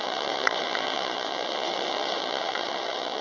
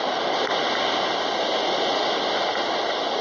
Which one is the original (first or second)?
second